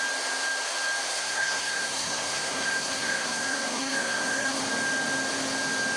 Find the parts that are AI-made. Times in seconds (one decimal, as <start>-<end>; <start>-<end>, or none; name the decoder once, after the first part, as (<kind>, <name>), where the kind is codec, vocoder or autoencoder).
1.1-4.6 (codec, SNAC)